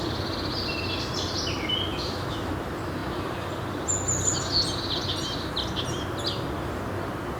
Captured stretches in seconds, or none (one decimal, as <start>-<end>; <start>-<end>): 0.0-1.9; 2.5-7.4